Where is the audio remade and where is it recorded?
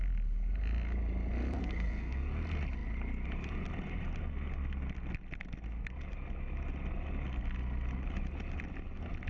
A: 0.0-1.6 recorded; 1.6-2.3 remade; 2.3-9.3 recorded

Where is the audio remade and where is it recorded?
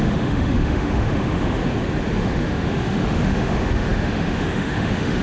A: 0.0-1.6 remade; 1.6-2.2 recorded; 2.2-5.2 remade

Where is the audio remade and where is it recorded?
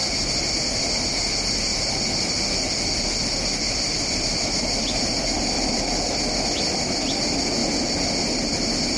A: 0.0-0.8 remade; 0.8-3.6 recorded; 3.6-5.8 remade; 5.8-9.0 recorded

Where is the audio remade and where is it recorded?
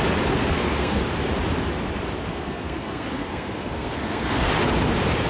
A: 0.0-0.4 recorded; 0.4-1.0 remade; 1.0-2.3 recorded; 2.3-4.5 remade; 4.5-5.3 recorded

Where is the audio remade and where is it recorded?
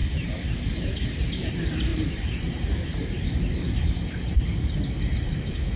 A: 0.0-5.8 remade